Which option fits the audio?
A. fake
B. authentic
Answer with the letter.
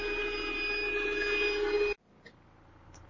B